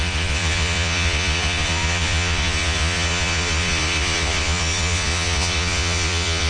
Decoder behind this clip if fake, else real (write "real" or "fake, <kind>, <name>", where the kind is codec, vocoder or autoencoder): fake, vocoder, Vocos